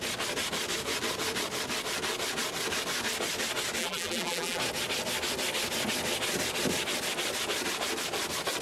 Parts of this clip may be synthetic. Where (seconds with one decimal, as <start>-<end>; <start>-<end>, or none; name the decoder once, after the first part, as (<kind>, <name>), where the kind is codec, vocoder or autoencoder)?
3.8-4.6 (vocoder, BigVGAN v2)